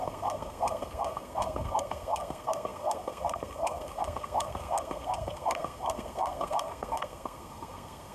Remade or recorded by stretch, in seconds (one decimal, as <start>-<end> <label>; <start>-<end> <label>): 0.0-8.1 remade